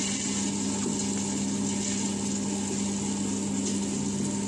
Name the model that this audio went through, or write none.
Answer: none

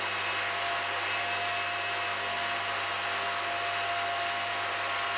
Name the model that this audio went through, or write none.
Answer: none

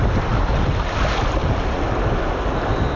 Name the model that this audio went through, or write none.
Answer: none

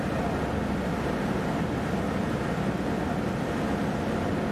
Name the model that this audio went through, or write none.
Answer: none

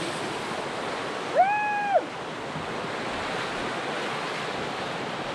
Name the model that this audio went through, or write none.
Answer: none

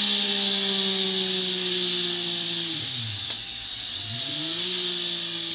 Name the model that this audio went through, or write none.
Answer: none